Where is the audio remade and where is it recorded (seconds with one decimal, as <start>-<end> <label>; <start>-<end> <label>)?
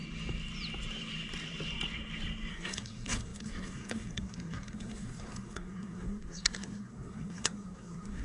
0.0-2.5 recorded; 2.5-8.2 remade